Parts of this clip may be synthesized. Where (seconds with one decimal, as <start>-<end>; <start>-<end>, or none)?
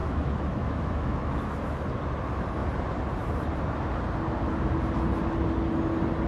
0.0-1.8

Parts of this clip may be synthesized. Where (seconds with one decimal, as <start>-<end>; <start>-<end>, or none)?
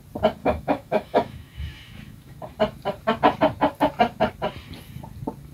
0.4-2.4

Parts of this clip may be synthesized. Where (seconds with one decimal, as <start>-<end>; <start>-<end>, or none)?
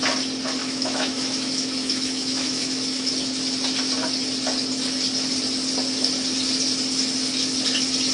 0.6-3.1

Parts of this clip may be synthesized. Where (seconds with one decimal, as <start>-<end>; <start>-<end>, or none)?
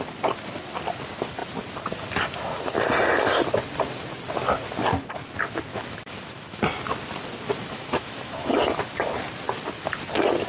5.7-6.6; 7.6-8.6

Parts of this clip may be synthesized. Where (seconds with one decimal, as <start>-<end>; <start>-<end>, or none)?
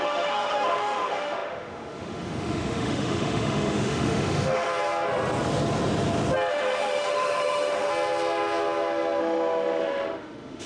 0.0-4.7; 6.5-7.9; 9.2-10.7